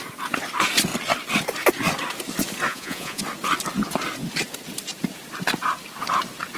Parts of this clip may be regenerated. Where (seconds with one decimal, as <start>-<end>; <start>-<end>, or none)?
2.7-3.2